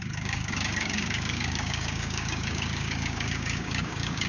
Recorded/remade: remade